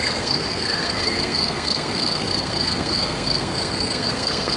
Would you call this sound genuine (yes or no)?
no